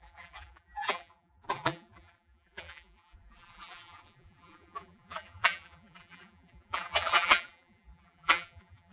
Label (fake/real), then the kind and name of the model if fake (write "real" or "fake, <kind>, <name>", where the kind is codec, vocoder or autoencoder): fake, vocoder, BigVGAN v2